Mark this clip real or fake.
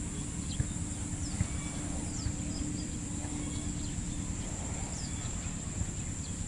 real